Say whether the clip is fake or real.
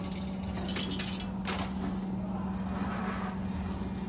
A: real